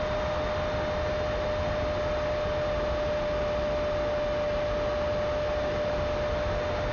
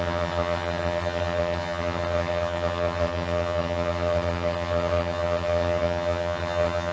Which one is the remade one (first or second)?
second